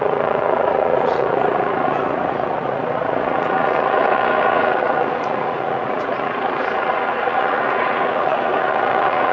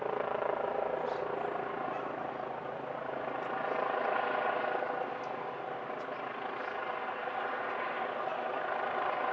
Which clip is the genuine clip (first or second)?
second